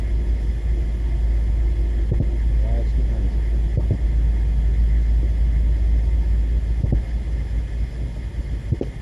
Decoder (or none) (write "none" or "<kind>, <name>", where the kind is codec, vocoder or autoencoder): none